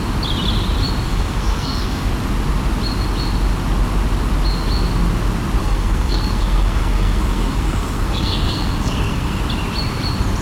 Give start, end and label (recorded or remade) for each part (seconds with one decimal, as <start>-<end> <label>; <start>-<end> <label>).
0.0-1.1 recorded; 1.1-2.1 remade; 2.1-5.6 recorded; 5.6-9.4 remade; 9.4-10.4 recorded